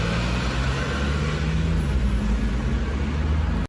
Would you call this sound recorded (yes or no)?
yes